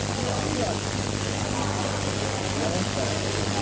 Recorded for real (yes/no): yes